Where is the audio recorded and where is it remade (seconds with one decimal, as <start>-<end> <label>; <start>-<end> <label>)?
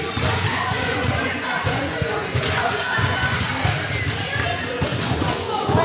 0.0-0.5 recorded; 0.5-3.5 remade; 3.5-4.9 recorded; 4.9-5.8 remade